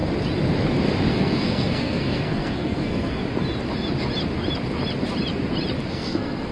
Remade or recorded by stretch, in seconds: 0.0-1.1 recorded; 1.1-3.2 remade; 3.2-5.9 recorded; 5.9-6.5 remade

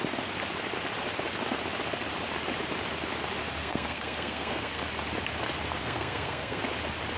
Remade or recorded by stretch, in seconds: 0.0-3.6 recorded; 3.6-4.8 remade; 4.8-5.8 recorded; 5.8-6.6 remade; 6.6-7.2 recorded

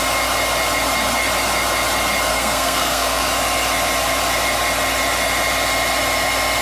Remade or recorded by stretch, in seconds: 0.0-2.3 recorded; 2.3-3.2 remade; 3.2-6.6 recorded

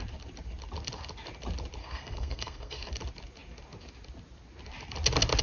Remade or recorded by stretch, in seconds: 0.0-1.8 recorded; 1.8-2.9 remade; 2.9-5.4 recorded

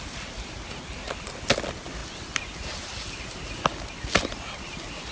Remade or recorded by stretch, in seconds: 0.0-5.1 recorded